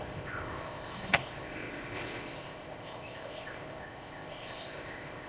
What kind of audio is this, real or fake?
fake